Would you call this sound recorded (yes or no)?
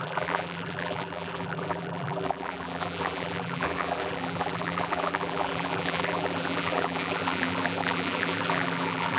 no